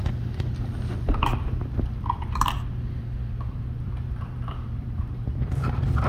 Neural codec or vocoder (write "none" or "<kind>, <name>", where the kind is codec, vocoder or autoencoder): vocoder, BigVGAN v2